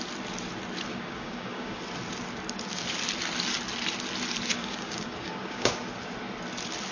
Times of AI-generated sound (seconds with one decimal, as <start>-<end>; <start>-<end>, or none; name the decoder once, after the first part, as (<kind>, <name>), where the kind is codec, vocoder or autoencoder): 0.9-1.8 (codec, DAC); 4.5-5.7